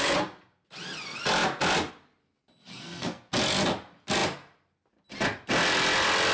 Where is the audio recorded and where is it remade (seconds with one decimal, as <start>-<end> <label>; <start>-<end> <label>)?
0.0-2.7 recorded; 2.7-3.3 remade; 3.3-6.3 recorded